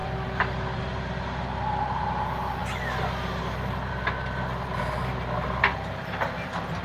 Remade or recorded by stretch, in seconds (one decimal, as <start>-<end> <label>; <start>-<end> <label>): 0.0-0.8 remade; 0.8-6.8 recorded